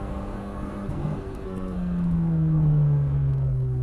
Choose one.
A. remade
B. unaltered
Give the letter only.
A